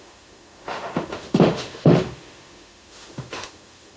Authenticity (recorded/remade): remade